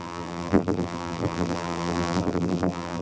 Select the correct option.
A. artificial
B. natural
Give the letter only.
A